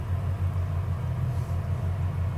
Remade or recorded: recorded